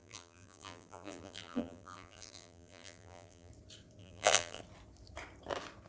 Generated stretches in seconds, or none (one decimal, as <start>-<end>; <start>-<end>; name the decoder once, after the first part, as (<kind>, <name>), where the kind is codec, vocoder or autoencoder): 0.0-3.5 (vocoder, BigVGAN v2); 4.0-4.6